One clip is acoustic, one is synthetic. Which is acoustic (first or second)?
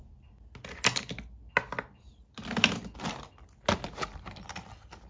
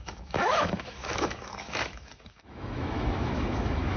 first